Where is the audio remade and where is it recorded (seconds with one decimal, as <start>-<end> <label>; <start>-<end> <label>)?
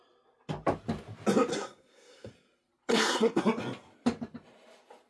0.0-1.5 recorded; 1.5-2.3 remade; 2.3-2.9 recorded; 2.9-3.4 remade; 3.4-5.1 recorded